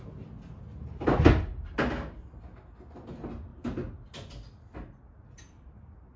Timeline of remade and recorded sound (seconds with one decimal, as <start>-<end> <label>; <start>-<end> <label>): 0.0-6.2 recorded